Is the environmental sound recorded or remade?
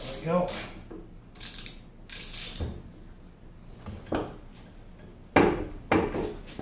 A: recorded